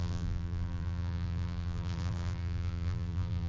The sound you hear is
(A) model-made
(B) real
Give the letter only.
A